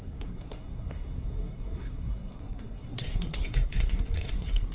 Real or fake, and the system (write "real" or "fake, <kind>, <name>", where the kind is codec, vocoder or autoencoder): fake, codec, SNAC